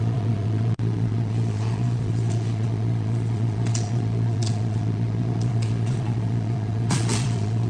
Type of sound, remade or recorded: remade